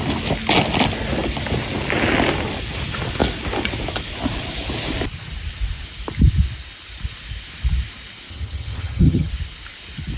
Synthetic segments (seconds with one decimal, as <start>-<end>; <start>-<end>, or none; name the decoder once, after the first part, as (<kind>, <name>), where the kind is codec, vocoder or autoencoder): 8.3-9.3 (vocoder, HiFi-GAN)